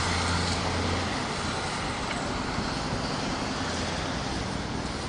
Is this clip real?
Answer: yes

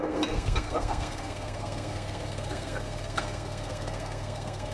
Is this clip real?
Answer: no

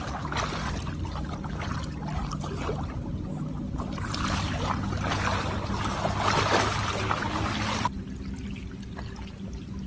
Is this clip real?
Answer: yes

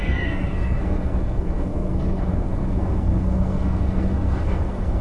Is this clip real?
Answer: no